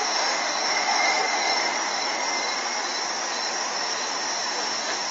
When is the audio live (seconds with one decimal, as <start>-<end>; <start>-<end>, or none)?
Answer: 1.5-4.1

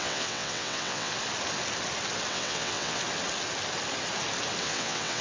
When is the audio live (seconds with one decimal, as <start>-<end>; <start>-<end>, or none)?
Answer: 1.1-2.3; 3.0-4.6

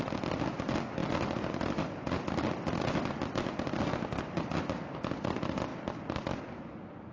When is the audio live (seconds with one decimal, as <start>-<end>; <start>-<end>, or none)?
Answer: 0.0-7.1

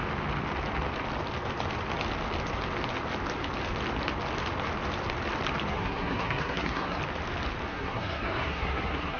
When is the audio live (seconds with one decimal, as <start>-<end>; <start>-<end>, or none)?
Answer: 0.0-5.7; 7.0-7.7